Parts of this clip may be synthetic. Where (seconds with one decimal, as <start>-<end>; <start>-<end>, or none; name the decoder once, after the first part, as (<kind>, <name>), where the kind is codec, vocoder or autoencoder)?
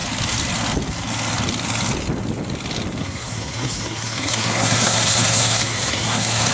3.0-6.5 (codec, SNAC)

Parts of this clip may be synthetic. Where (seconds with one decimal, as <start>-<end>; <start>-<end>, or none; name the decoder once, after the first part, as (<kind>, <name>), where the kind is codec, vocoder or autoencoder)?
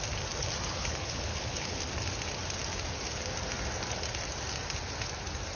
0.8-1.8 (codec, HILCodec)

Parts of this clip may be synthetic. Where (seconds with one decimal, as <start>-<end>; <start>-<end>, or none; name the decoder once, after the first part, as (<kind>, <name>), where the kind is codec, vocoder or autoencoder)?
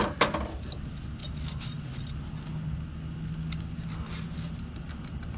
none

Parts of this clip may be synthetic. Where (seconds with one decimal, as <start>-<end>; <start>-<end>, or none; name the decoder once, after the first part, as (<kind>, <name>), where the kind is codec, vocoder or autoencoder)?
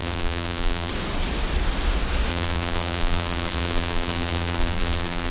0.0-0.9 (vocoder, BigVGAN v2); 2.3-5.3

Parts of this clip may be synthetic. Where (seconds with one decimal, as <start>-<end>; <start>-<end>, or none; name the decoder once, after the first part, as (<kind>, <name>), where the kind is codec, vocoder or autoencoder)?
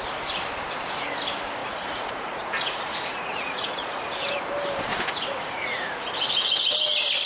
1.6-4.4 (vocoder, Vocos); 4.9-6.1